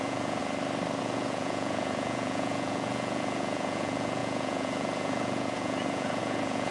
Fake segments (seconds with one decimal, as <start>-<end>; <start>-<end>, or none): 0.0-0.4; 1.0-6.7